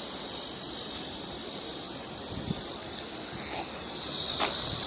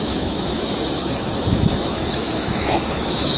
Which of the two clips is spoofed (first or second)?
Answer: second